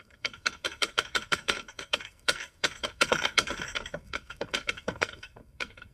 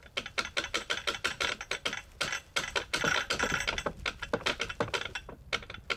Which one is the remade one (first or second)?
first